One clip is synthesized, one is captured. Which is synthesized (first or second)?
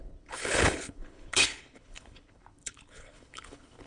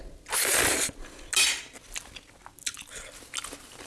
first